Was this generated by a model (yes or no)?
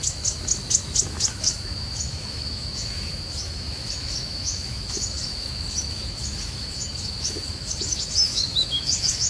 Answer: yes